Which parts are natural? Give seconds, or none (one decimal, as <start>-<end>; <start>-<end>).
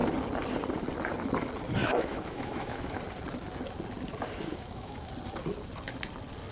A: 0.0-1.8; 3.0-4.5; 5.1-6.5